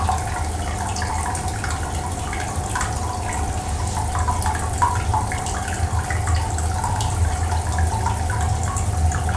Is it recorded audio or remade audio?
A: recorded